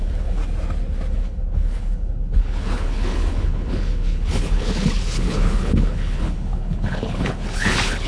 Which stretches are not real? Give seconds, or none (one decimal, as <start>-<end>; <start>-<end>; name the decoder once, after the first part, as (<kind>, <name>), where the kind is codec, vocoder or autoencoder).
0.0-0.4 (codec, HILCodec); 1.1-8.1